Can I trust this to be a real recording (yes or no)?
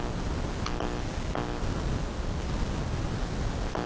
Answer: yes